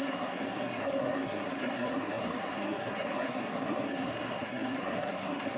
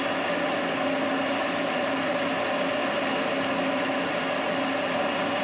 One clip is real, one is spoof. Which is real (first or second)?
second